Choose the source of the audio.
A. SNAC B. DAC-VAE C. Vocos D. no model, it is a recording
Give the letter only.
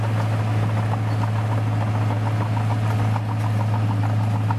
D